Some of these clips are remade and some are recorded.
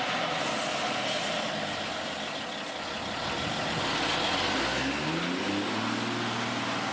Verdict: recorded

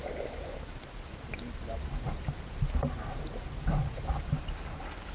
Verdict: remade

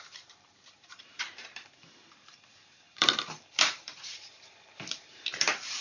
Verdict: remade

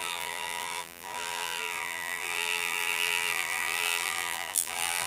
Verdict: remade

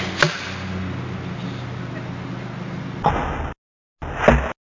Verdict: recorded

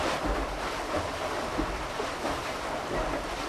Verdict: recorded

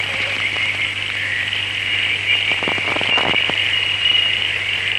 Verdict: remade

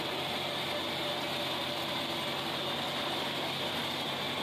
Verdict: recorded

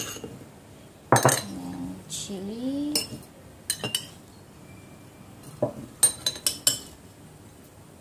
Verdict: recorded